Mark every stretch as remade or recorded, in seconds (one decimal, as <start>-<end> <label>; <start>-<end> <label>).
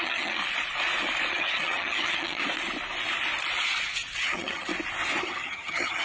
0.0-0.4 remade; 0.4-1.3 recorded; 1.3-2.4 remade; 2.4-4.2 recorded; 4.2-4.7 remade; 4.7-5.2 recorded; 5.2-6.0 remade